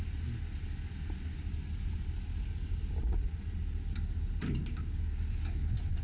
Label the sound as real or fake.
real